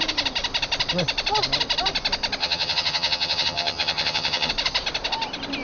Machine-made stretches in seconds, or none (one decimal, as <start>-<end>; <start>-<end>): 2.4-4.5